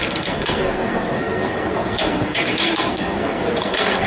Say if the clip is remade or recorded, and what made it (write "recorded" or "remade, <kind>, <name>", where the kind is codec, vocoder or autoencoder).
remade, codec, SNAC